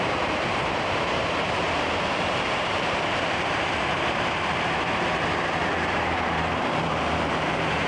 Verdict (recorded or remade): remade